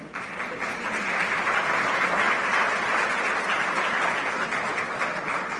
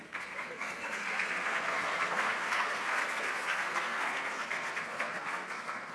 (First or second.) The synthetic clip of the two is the second